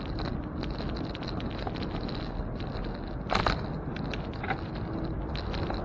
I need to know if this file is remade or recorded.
recorded